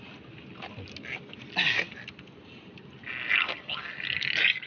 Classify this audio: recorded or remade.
recorded